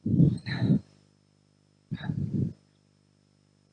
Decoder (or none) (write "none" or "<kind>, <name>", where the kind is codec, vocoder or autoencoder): none